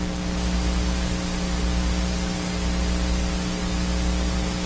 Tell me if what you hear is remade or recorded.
recorded